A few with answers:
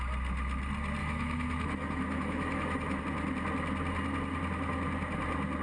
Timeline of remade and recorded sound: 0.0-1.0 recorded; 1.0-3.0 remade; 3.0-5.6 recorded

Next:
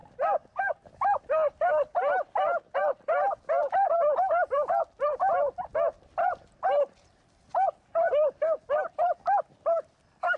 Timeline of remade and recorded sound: 0.0-10.4 recorded

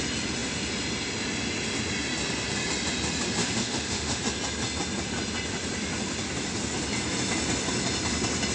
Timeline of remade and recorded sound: 0.0-3.4 recorded; 3.4-4.2 remade; 4.2-8.5 recorded

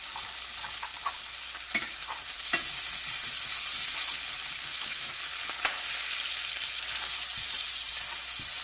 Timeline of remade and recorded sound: 0.0-4.7 recorded; 4.7-5.2 remade; 5.2-8.6 recorded

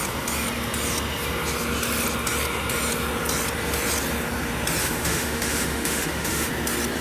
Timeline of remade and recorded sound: 0.0-4.8 recorded; 4.8-6.5 remade; 6.5-7.0 recorded

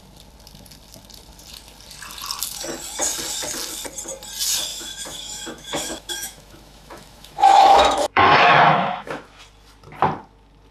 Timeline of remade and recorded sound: 0.0-4.7 recorded; 4.7-9.4 remade; 9.4-10.7 recorded

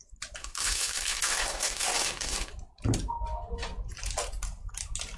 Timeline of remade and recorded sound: 0.0-0.4 recorded; 0.4-2.5 remade; 2.5-5.2 recorded

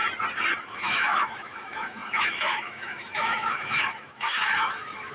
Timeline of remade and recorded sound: 0.0-0.6 recorded; 0.6-5.1 remade